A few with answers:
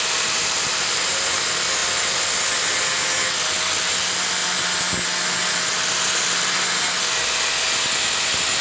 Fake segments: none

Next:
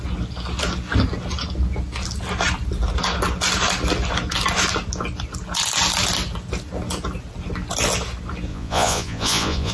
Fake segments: 8.5-9.7 (vocoder, Vocos)

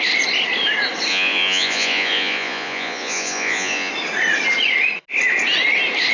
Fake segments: 1.1-3.9 (vocoder, Vocos)

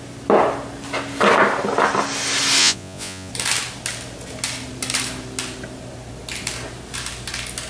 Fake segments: 2.6-3.3 (vocoder, Vocos)

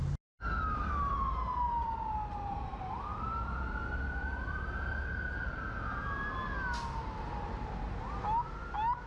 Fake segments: none